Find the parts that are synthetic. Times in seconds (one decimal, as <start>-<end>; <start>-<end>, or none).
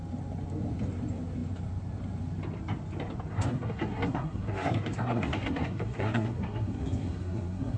3.3-7.8